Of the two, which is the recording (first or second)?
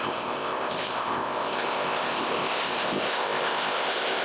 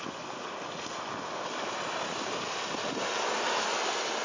second